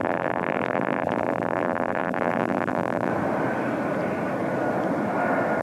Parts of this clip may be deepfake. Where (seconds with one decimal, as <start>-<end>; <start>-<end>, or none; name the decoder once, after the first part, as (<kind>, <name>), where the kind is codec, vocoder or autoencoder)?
0.0-3.1 (vocoder, BigVGAN v2)